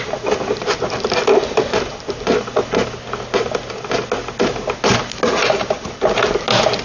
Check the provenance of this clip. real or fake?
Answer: real